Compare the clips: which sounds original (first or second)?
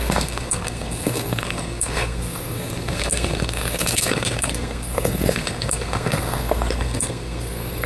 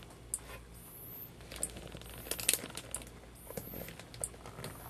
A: second